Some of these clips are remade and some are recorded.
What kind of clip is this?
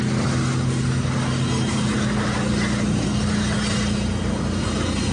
recorded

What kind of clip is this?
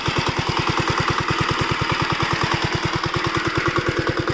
recorded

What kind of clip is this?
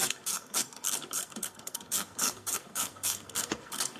remade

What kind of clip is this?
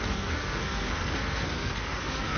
remade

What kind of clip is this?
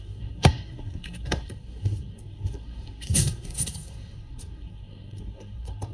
remade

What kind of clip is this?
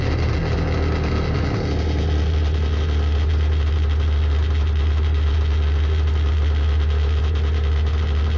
recorded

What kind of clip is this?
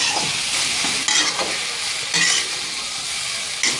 recorded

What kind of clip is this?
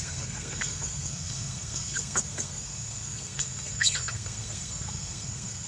remade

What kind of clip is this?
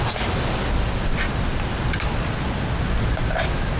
recorded